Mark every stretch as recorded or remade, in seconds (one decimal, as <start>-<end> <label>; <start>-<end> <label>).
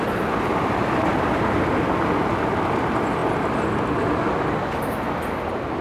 0.0-1.1 recorded; 1.1-1.9 remade; 1.9-5.8 recorded